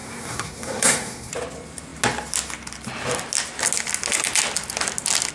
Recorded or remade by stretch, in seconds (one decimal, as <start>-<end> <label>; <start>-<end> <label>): 0.0-1.3 remade; 1.3-5.3 recorded